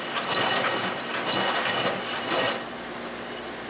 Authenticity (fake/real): real